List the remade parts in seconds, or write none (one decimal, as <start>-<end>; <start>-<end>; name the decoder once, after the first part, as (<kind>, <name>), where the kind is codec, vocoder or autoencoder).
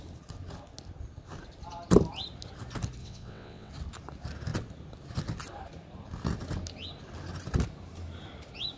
3.0-3.7 (vocoder, WaveNeXt)